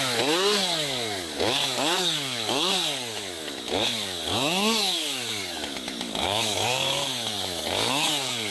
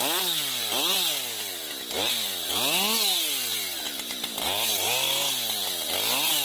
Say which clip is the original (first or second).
second